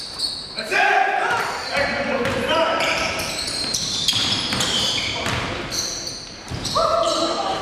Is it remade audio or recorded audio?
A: remade